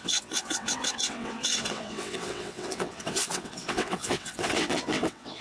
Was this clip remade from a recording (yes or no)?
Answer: yes